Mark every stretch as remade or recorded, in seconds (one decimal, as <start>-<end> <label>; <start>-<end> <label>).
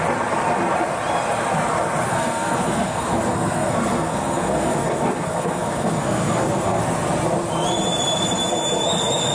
0.0-2.1 recorded; 2.1-6.8 remade; 6.8-9.3 recorded